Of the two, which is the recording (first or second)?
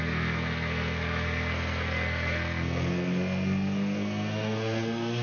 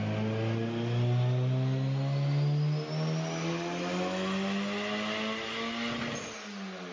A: second